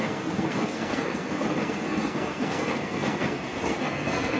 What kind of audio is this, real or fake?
fake